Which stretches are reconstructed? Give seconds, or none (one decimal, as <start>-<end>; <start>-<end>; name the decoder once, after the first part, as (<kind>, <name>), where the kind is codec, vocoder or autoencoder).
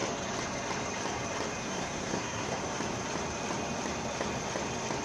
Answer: 1.6-2.6 (codec, SNAC)